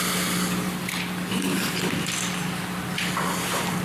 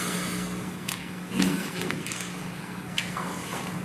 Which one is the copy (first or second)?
second